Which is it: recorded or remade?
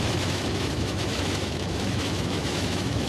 remade